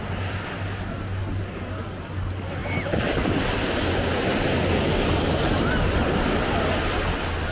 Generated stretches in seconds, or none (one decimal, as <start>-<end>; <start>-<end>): none